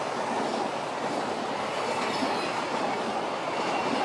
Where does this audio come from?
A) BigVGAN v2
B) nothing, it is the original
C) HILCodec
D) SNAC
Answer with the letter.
B